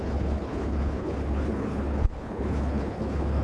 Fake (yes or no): yes